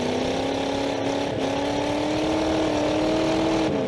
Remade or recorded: recorded